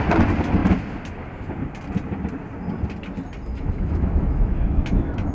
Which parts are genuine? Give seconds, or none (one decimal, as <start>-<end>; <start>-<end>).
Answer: 0.0-3.5